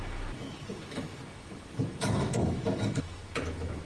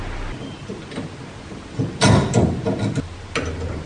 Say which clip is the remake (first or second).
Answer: first